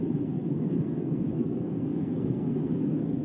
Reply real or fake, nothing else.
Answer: fake